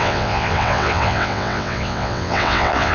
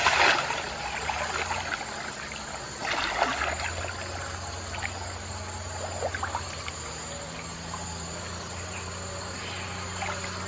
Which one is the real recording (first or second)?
second